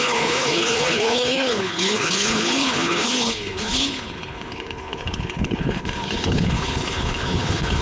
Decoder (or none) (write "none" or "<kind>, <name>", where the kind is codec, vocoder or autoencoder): codec, HILCodec